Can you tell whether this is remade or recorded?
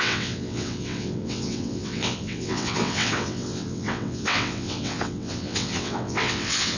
remade